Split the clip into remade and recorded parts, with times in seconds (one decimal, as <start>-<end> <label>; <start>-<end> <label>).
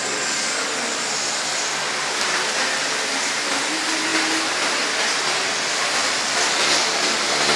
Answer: 0.0-7.6 recorded